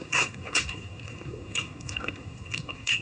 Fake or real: fake